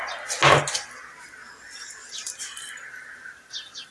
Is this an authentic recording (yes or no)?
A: yes